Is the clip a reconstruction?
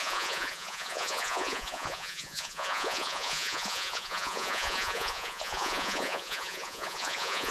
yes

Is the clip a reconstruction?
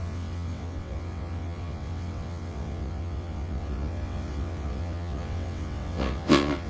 yes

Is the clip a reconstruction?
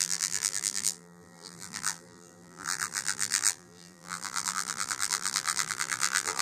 yes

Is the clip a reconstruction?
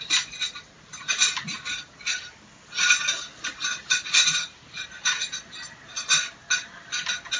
no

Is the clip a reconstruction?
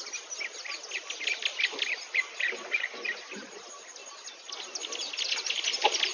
no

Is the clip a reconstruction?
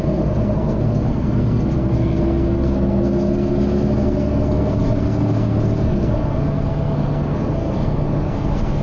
yes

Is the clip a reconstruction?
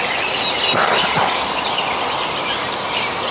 no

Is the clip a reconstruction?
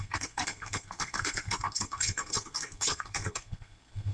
yes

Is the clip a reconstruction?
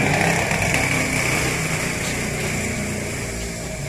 no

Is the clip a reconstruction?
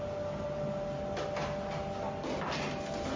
no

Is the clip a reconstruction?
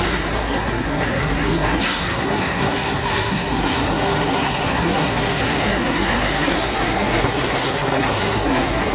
yes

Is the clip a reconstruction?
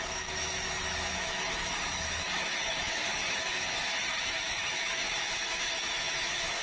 yes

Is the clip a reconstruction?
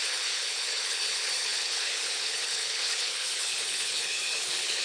yes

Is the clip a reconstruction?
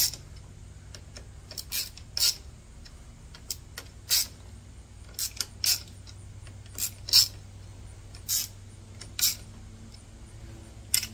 no